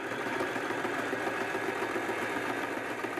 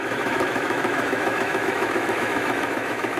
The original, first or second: first